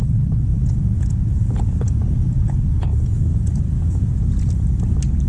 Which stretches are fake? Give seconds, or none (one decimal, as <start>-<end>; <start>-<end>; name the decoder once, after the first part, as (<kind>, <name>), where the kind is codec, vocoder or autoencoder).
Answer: 0.5-2.6 (vocoder, Vocos); 3.3-4.3

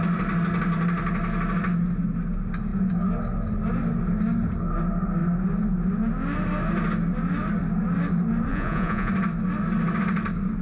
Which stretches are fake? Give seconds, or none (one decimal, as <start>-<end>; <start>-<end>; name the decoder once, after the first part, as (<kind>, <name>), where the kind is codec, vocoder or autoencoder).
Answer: 8.5-9.1 (vocoder, Vocos)

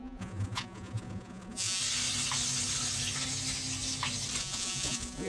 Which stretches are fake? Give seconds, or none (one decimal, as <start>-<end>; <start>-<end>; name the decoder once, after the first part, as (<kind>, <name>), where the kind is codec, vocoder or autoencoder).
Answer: 0.0-1.8 (vocoder, Vocos); 4.4-5.3

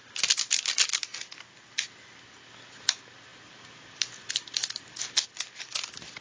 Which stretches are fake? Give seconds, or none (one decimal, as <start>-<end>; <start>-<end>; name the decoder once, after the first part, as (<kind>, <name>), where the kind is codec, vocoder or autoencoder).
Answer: none

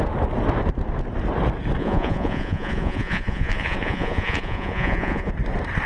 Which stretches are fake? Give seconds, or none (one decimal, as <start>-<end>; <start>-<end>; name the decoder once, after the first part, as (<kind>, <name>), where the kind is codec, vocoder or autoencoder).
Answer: 1.8-5.3 (vocoder, Vocos)

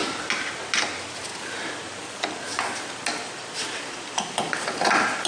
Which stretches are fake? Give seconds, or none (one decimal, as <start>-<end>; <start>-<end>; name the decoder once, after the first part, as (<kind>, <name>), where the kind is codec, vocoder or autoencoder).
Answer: none

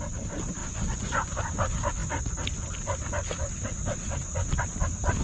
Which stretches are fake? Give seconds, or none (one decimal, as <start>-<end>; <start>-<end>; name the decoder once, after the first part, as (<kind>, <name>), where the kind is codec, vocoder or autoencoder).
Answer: 0.6-1.4 (vocoder, Vocos)

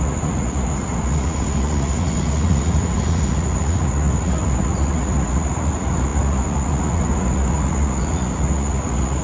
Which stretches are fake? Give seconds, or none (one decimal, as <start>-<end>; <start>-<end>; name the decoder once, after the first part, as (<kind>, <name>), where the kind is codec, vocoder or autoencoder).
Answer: 0.0-9.2 (vocoder, Vocos)